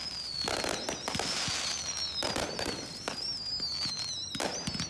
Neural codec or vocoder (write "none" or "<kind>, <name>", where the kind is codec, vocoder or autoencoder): none